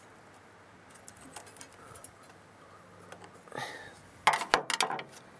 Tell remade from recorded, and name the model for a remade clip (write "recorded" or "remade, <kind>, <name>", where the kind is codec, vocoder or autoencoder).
recorded